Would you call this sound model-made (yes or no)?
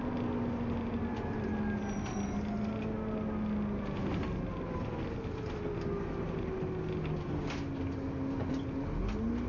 no